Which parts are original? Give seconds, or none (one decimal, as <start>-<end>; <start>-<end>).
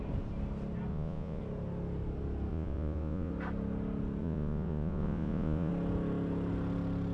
0.0-0.9; 1.4-2.5; 3.3-4.2; 5.7-7.1